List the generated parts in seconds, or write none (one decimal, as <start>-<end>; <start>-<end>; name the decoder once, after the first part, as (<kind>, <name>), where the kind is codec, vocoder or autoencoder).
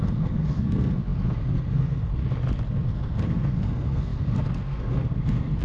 0.0-2.2 (codec, SNAC); 2.7-5.6